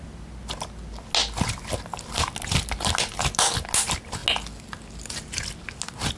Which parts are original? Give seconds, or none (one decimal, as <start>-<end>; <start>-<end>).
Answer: 0.0-6.2